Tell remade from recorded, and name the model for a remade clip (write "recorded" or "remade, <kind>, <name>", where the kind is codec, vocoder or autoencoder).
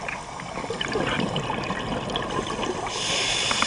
recorded